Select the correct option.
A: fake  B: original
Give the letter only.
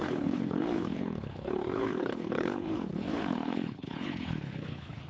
A